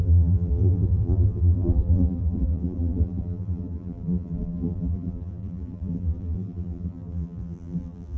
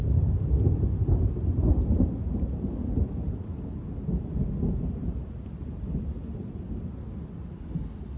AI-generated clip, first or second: first